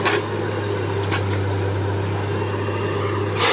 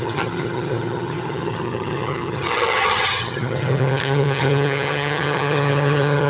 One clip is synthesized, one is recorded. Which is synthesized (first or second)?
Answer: second